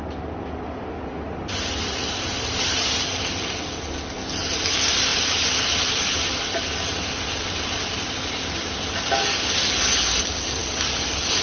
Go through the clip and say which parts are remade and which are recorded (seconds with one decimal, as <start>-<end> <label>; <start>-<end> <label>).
0.0-11.4 recorded